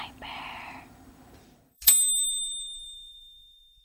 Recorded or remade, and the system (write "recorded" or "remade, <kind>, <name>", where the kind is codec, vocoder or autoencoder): remade, vocoder, BigVGAN v2